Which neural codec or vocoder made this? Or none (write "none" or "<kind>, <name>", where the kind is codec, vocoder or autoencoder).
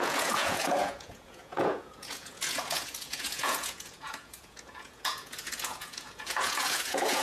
vocoder, Vocos